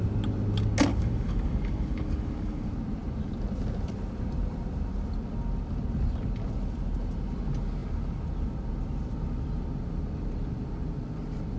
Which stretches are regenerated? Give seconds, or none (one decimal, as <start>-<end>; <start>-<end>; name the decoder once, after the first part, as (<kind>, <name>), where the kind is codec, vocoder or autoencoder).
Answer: 0.9-2.7 (codec, DAC)